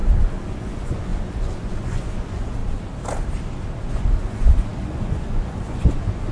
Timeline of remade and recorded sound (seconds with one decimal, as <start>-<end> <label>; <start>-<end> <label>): 0.0-0.5 recorded; 0.5-2.6 remade; 2.6-3.9 recorded; 3.9-6.3 remade